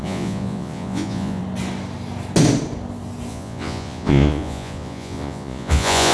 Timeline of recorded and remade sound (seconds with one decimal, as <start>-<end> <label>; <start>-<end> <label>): 0.0-1.4 remade; 1.4-3.3 recorded; 3.3-6.1 remade